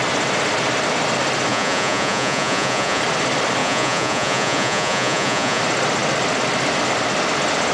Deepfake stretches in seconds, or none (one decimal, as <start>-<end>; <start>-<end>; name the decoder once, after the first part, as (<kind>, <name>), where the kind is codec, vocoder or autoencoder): 1.5-3.0 (vocoder, Vocos); 3.6-5.6

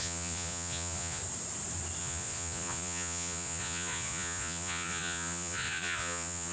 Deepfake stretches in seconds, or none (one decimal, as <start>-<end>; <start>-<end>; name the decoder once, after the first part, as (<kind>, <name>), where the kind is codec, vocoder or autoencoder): 0.0-1.2 (vocoder, Vocos); 2.0-6.5

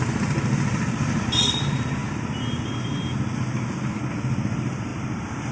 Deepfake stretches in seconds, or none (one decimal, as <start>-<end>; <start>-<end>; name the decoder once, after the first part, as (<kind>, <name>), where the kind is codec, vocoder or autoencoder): none